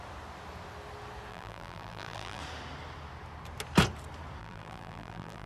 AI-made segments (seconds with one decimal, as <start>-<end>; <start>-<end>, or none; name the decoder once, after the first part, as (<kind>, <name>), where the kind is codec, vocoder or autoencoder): 1.3-2.4 (vocoder, BigVGAN v2); 4.4-5.5